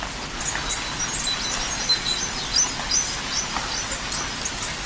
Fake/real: real